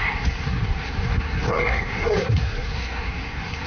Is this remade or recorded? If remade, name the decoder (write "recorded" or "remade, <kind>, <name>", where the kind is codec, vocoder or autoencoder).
remade, codec, SNAC